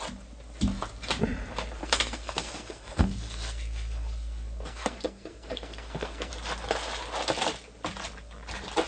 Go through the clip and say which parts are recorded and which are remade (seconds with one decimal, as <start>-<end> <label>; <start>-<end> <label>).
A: 0.0-1.8 recorded; 1.8-6.3 remade; 6.3-8.9 recorded